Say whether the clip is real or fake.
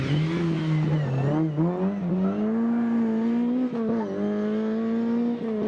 real